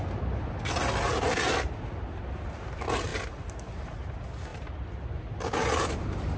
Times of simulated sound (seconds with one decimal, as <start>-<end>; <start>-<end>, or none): none